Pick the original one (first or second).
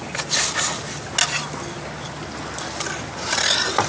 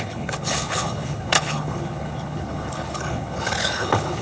first